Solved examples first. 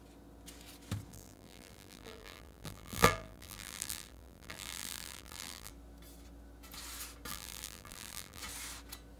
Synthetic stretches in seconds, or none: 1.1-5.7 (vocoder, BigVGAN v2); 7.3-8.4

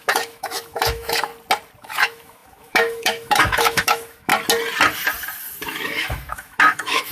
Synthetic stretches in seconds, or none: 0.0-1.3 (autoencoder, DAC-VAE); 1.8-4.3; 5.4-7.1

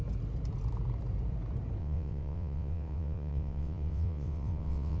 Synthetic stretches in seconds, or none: 1.8-5.0 (vocoder, WaveNeXt)

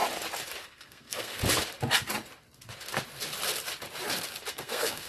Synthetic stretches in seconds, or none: 0.6-1.4 (codec, SNAC); 4.5-5.1

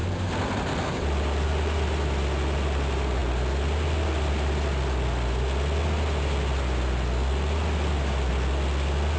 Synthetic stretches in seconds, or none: none